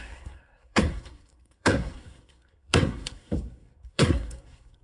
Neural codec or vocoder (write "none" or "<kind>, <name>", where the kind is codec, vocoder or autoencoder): codec, SNAC